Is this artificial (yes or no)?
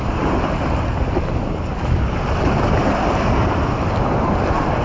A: no